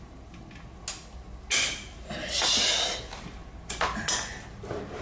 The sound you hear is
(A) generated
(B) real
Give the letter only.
B